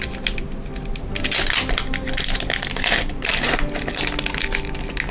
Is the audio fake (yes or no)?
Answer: no